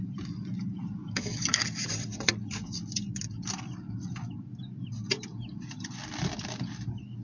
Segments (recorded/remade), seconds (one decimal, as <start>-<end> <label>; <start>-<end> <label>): 0.0-1.0 recorded; 1.0-1.6 remade; 1.6-7.2 recorded